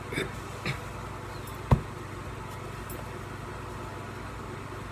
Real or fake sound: real